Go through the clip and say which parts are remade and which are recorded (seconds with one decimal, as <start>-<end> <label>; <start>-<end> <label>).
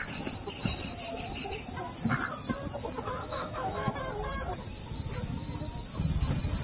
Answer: 0.0-3.2 recorded; 3.2-3.9 remade; 3.9-6.6 recorded